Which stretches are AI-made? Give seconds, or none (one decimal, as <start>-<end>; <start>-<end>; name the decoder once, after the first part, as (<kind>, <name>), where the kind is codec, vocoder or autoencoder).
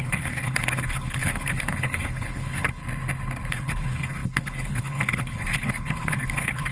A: 0.0-2.8 (codec, HILCodec); 3.5-6.7